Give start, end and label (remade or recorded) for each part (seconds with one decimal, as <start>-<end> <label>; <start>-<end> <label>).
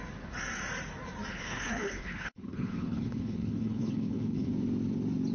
0.0-1.3 recorded; 1.3-4.5 remade; 4.5-5.3 recorded